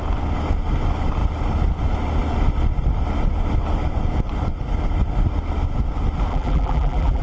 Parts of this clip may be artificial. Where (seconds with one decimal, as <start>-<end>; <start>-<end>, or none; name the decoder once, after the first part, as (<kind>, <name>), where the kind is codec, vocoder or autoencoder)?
6.3-7.2 (vocoder, BigVGAN v2)